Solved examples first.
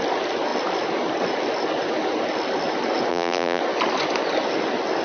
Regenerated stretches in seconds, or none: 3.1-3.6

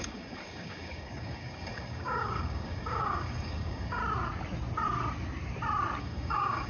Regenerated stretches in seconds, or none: 0.0-4.0; 6.0-6.7

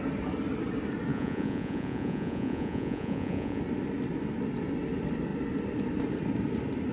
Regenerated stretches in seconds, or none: 1.1-3.6

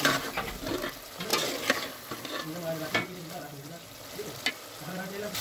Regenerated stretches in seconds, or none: none

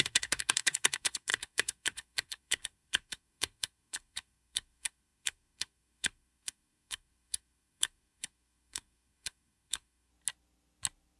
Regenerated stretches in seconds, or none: 0.0-10.1

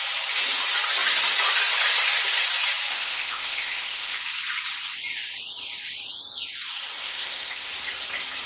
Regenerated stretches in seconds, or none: 2.9-4.2; 7.0-7.7